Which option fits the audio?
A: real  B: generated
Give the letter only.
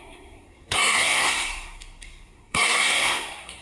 B